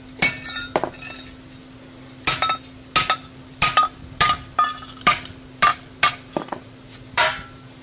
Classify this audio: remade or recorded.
recorded